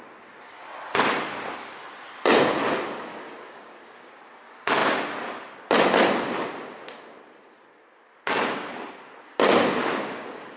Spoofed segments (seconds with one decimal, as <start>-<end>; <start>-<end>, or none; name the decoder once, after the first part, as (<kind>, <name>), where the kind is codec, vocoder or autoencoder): 3.1-4.1 (codec, DAC); 9.8-10.6